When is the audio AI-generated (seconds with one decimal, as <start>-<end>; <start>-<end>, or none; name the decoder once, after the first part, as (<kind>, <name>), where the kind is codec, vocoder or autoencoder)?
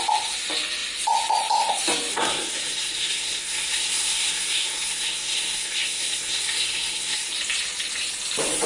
2.1-7.3 (codec, SNAC)